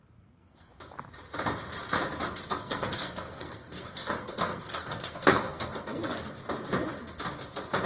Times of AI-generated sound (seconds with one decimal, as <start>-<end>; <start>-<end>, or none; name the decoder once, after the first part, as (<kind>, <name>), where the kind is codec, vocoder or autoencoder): 0.0-0.7 (codec, SNAC); 2.5-6.4